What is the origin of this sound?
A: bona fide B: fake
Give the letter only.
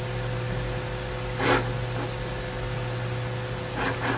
A